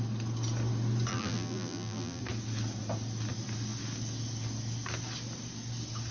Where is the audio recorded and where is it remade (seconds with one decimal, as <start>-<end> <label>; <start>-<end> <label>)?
0.0-1.1 recorded; 1.1-2.2 remade; 2.2-6.1 recorded